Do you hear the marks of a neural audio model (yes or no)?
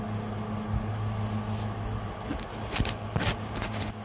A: no